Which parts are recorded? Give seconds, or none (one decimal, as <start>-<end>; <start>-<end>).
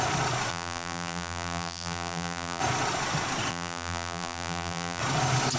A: 0.0-0.5; 2.6-3.5; 5.0-5.6